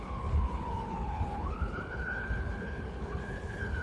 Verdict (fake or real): fake